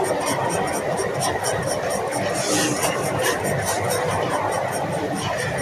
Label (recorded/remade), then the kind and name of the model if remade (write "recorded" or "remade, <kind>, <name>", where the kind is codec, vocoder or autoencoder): recorded